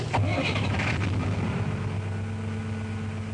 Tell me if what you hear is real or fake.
real